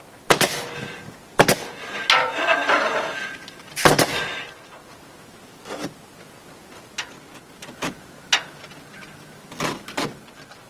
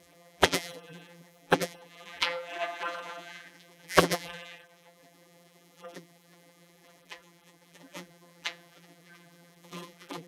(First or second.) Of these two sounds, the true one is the first